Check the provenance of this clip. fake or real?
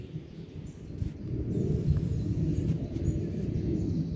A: real